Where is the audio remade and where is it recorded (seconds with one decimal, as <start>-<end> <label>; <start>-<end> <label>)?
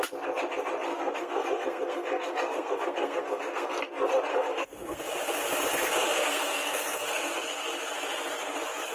0.0-0.9 recorded; 0.9-3.8 remade; 3.8-4.3 recorded; 4.3-5.0 remade; 5.0-6.2 recorded; 6.2-7.3 remade; 7.3-8.9 recorded